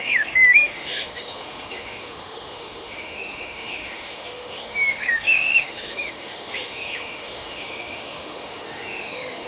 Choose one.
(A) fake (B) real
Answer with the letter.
A